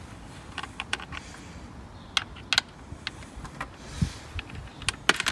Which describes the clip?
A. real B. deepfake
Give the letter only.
A